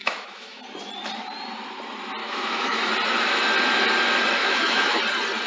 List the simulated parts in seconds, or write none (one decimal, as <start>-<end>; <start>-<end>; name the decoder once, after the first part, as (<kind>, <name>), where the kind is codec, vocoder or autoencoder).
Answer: 0.0-0.6 (autoencoder, DAC-VAE); 2.2-2.9; 4.4-5.0